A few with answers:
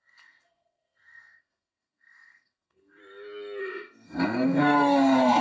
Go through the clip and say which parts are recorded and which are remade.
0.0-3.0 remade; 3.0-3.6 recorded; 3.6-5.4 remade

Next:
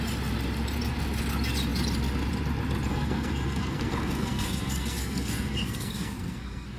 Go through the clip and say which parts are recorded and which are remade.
0.0-2.9 recorded; 2.9-6.8 remade

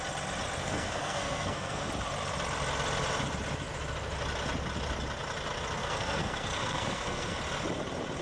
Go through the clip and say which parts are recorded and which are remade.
0.0-0.6 recorded; 0.6-1.9 remade; 1.9-5.8 recorded; 5.8-7.4 remade; 7.4-8.2 recorded

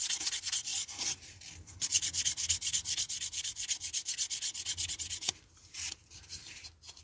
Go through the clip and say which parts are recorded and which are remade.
0.0-7.0 recorded

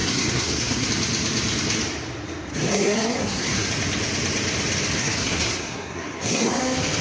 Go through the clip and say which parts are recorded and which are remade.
0.0-0.9 remade; 0.9-2.5 recorded; 2.5-3.7 remade; 3.7-5.0 recorded; 5.0-6.6 remade; 6.6-7.0 recorded

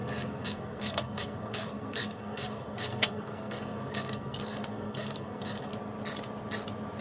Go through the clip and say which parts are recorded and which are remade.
0.0-5.7 remade; 5.7-7.0 recorded

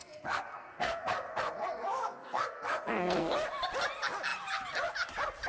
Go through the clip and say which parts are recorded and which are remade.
0.0-3.3 remade; 3.3-5.5 recorded

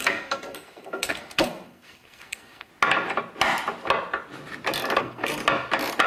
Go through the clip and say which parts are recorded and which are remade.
0.0-2.7 remade; 2.7-5.0 recorded; 5.0-5.4 remade; 5.4-6.1 recorded